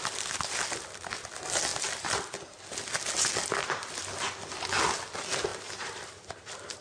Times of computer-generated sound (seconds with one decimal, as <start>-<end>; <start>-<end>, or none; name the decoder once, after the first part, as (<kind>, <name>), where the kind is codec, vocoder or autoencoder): 5.5-6.8 (vocoder, BigVGAN v2)